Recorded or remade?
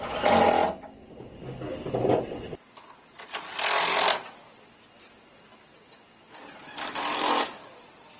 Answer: recorded